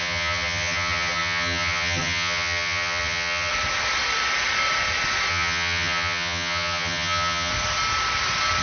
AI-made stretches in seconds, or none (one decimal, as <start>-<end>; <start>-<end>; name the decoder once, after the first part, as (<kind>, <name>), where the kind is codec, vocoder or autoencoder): 0.0-3.5 (vocoder, HiFi-GAN); 5.3-7.5

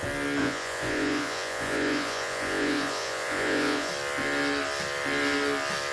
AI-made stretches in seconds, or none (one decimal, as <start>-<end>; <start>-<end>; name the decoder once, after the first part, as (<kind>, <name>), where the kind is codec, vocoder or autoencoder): 0.4-3.9 (vocoder, Vocos)

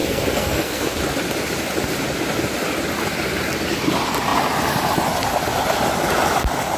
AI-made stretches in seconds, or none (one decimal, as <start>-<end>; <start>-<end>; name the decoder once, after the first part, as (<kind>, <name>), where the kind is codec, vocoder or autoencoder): 0.0-1.0 (codec, SNAC)

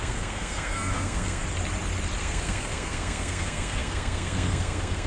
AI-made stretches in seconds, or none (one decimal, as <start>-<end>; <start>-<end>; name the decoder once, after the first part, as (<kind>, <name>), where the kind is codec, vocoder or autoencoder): 0.0-1.4 (codec, SNAC); 2.2-5.1

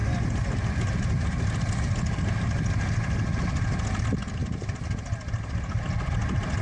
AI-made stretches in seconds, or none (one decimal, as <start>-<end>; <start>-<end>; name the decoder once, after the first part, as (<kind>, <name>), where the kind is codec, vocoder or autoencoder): none